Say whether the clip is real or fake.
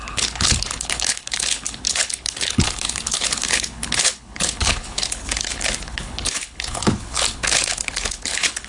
fake